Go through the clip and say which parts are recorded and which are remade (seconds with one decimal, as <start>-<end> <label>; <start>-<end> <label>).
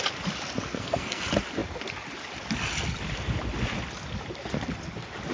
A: 0.0-0.7 recorded; 0.7-1.2 remade; 1.2-5.3 recorded